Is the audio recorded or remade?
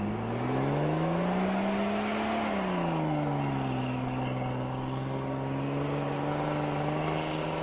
recorded